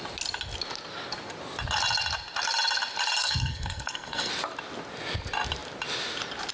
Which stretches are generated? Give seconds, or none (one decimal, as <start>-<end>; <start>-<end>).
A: 3.2-4.3